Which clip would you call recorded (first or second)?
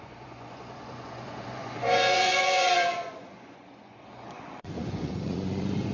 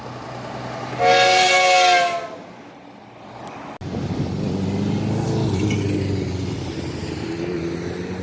second